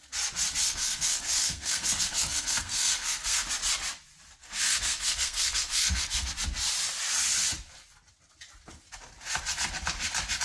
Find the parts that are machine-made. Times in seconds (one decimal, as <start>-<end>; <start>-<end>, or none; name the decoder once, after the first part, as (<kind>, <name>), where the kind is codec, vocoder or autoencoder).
0.6-3.5 (codec, SNAC); 4.4-6.3